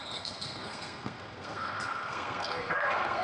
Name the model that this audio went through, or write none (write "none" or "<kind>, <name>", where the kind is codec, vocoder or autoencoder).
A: codec, SNAC